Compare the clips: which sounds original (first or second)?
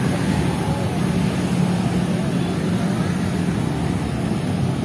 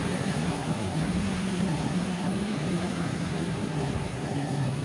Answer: first